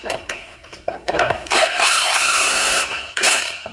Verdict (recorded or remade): remade